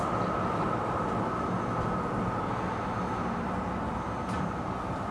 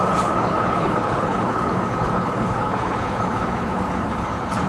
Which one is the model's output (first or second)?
second